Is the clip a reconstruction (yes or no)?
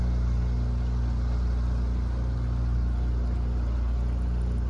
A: no